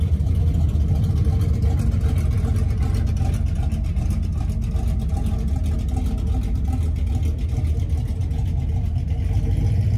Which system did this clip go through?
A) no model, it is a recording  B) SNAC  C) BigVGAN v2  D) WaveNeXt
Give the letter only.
A